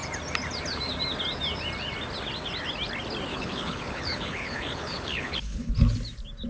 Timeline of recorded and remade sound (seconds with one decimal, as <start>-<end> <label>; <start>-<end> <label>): 0.0-3.3 recorded; 3.3-5.7 remade; 5.7-6.5 recorded